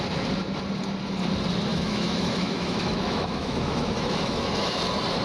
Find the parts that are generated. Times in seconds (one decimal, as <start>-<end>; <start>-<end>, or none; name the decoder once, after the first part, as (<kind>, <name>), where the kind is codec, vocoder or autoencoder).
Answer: 1.7-4.8 (autoencoder, DAC-VAE)